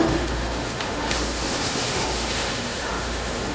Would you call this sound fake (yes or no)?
yes